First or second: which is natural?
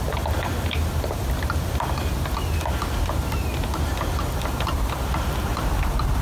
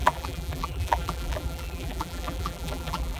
first